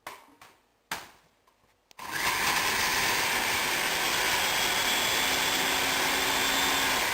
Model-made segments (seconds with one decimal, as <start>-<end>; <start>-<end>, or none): 2.9-3.8